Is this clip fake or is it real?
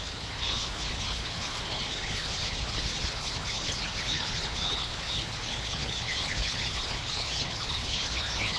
fake